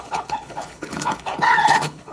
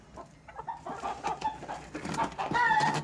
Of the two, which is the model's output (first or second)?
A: first